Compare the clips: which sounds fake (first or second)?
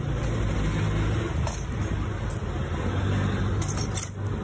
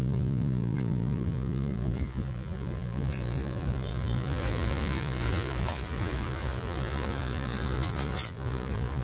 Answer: second